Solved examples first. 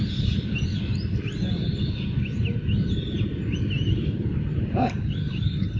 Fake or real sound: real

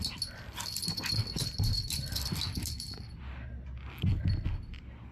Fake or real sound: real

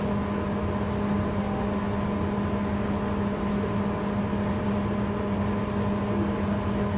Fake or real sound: real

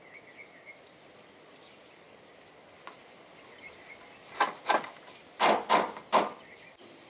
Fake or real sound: real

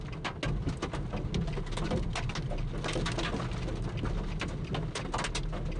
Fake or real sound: real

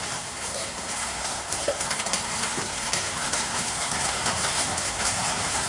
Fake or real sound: fake